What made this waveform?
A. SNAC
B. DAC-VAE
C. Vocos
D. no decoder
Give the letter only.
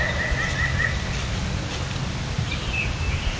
D